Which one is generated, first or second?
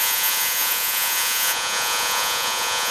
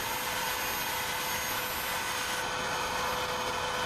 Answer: first